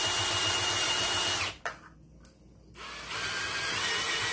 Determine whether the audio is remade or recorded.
recorded